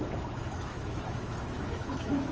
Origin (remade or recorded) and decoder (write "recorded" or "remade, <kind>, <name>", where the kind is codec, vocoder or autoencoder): remade, autoencoder, DAC-VAE